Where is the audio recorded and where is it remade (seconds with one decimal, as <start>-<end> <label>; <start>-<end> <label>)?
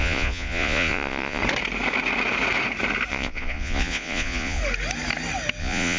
0.0-1.4 remade; 1.4-3.1 recorded; 3.1-4.6 remade; 4.6-5.6 recorded; 5.6-6.0 remade